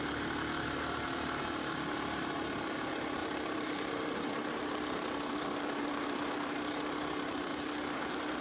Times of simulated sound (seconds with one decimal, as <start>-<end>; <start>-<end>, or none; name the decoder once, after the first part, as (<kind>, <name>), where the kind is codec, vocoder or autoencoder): 0.0-8.4 (vocoder, BigVGAN v2)